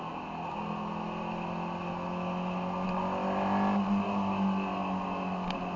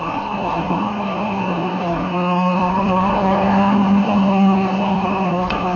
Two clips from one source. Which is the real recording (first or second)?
first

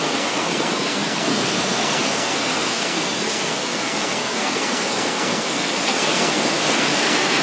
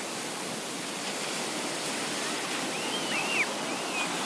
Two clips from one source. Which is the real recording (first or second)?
second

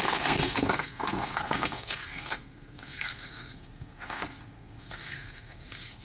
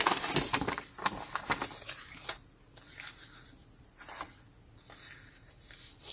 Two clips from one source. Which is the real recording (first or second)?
second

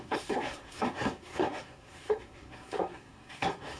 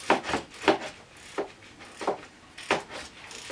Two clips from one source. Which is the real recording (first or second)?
second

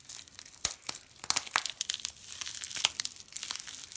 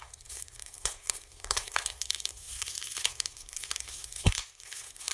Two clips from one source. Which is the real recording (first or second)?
first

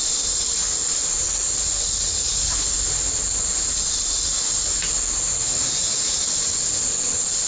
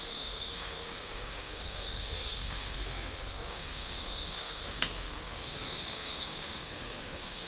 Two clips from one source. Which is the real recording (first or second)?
first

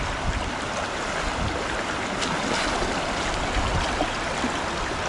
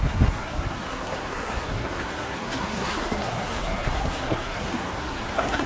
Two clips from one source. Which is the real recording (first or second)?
first